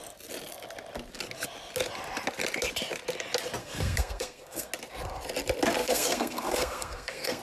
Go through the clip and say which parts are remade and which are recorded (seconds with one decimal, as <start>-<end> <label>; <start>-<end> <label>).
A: 0.0-3.6 recorded; 3.6-4.7 remade; 4.7-5.8 recorded; 5.8-7.4 remade